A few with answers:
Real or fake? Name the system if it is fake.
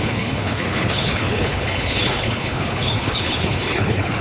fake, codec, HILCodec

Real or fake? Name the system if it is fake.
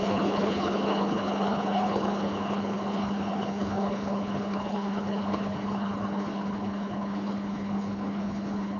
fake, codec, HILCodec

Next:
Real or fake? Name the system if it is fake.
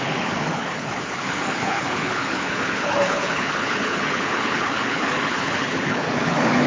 fake, codec, HILCodec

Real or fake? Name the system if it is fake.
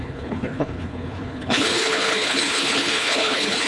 fake, codec, HILCodec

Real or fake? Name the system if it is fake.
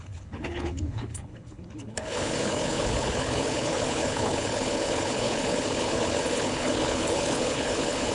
fake, codec, HILCodec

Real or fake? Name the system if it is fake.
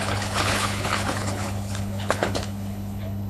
fake, codec, HILCodec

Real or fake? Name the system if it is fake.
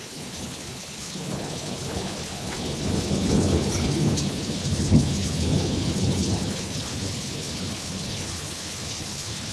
fake, codec, HILCodec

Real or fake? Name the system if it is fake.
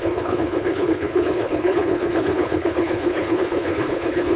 fake, codec, HILCodec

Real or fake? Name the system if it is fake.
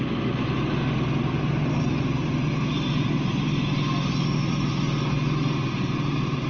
real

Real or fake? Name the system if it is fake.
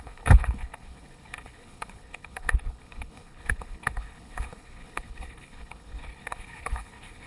fake, codec, HILCodec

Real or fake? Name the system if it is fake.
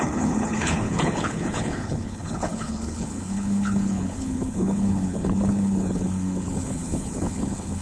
fake, codec, HILCodec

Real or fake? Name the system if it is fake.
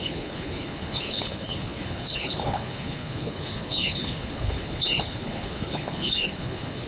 fake, codec, HILCodec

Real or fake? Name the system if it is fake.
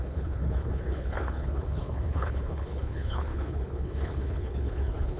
fake, codec, HILCodec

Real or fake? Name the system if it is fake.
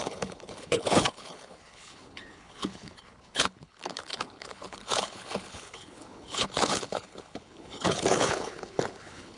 fake, codec, HILCodec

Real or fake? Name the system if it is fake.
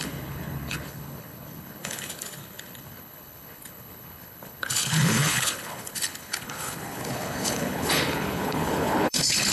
fake, codec, HILCodec